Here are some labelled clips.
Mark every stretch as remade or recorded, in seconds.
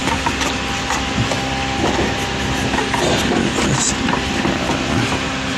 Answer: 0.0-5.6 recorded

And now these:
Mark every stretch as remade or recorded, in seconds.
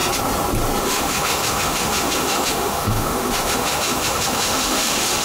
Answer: 0.0-0.8 recorded; 0.8-5.2 remade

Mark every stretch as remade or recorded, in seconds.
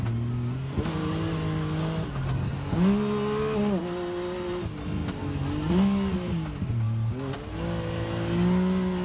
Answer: 0.0-9.0 recorded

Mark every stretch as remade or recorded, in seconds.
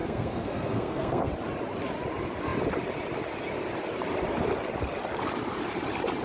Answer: 0.0-1.3 remade; 1.3-6.2 recorded